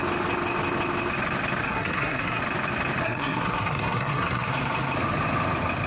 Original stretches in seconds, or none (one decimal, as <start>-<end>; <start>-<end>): 0.0-1.6; 2.4-3.0; 4.5-5.9